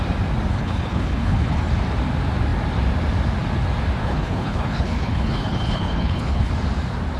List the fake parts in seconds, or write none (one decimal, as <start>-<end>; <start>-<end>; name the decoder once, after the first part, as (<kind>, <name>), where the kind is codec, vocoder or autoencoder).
0.5-1.6 (codec, HILCodec); 4.0-6.5